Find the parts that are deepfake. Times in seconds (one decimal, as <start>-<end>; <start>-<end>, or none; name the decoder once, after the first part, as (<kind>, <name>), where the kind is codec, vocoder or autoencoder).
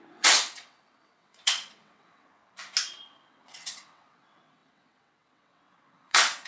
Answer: 0.0-2.4 (vocoder, WaveNeXt); 3.1-6.5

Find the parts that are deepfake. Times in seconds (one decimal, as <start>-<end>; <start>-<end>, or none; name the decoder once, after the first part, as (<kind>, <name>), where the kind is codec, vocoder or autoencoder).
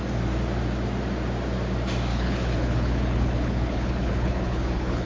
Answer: 2.1-5.1 (codec, HILCodec)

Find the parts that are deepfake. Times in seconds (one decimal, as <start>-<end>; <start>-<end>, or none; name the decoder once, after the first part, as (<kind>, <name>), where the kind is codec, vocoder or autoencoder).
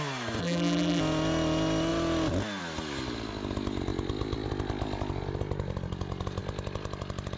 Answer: 0.4-1.0 (vocoder, BigVGAN v2)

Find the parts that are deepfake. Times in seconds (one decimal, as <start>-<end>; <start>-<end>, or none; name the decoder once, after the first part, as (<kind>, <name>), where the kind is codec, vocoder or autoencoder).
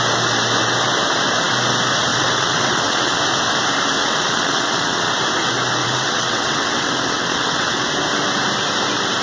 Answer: 2.1-3.2 (vocoder, WaveNeXt); 4.0-5.1; 5.8-7.9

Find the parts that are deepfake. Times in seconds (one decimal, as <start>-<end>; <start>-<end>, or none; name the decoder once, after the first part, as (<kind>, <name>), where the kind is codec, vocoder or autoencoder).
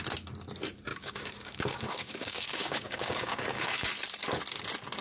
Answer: 0.9-3.9 (codec, DAC)